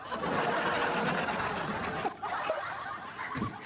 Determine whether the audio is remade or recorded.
recorded